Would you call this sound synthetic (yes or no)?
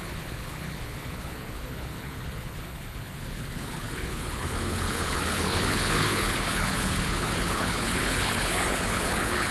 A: yes